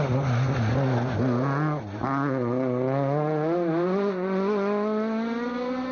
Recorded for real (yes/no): yes